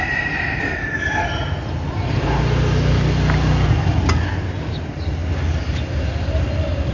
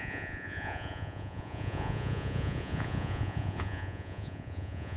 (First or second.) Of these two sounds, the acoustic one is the first